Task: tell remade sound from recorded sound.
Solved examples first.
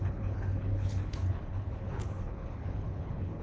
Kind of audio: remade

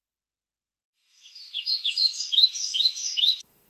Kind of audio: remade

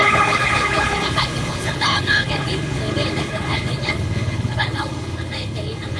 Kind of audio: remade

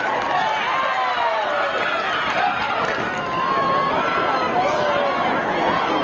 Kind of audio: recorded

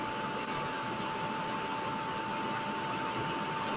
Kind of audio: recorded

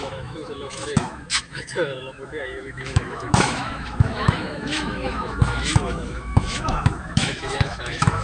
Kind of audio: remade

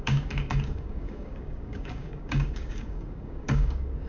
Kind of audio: remade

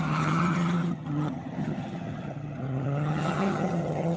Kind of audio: remade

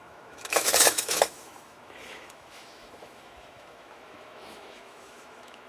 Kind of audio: remade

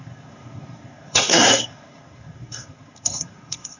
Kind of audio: remade